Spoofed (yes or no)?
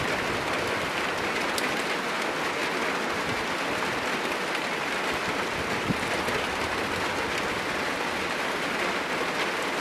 no